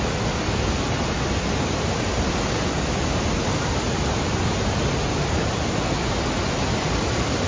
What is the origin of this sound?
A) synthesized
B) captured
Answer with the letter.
B